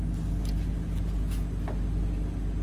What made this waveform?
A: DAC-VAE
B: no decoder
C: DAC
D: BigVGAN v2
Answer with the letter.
B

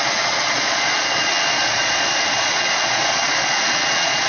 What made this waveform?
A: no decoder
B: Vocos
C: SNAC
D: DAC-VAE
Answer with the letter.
B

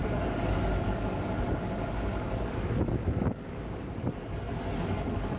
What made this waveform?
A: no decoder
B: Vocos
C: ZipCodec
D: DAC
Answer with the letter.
D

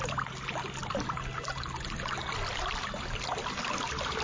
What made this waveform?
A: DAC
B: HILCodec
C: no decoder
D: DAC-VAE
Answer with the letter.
C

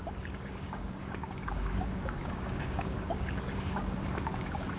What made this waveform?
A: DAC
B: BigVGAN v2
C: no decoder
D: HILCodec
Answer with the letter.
A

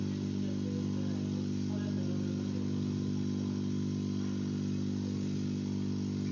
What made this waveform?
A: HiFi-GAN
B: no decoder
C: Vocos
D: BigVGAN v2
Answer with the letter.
B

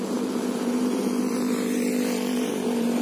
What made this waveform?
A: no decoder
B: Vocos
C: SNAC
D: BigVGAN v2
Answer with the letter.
D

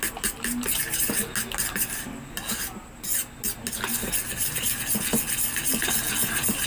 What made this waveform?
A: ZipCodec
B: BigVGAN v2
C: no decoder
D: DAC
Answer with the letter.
C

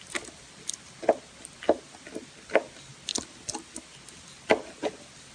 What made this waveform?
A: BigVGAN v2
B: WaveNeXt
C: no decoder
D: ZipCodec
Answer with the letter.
C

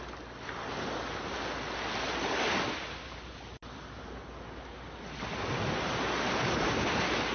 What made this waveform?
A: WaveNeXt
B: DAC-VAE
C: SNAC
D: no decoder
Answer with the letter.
D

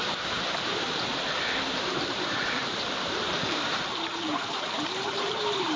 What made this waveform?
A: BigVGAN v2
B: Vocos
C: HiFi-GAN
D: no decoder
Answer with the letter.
A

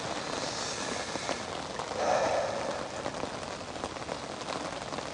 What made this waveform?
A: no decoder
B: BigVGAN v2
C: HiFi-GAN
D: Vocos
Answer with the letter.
A